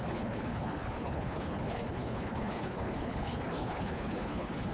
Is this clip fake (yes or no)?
yes